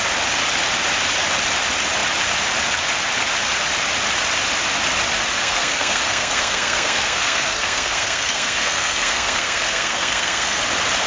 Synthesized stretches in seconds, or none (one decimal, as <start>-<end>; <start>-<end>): 5.4-10.6